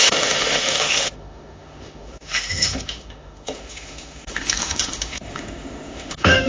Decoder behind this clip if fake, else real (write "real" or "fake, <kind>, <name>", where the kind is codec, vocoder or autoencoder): fake, autoencoder, DAC-VAE